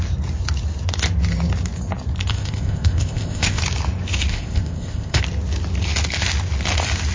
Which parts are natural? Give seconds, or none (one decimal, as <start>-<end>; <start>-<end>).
0.0-2.3; 3.6-4.3; 5.2-7.1